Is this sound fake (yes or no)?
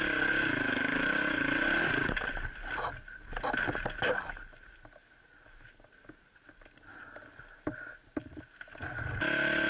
no